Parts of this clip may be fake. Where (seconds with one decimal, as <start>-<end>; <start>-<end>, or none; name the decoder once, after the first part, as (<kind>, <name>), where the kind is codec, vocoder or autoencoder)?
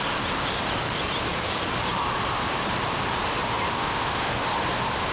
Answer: 3.7-4.3 (autoencoder, DAC-VAE)